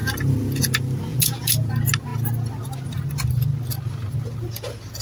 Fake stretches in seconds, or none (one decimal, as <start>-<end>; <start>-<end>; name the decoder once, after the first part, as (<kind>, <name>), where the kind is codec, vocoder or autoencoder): 1.1-1.7 (vocoder, Vocos)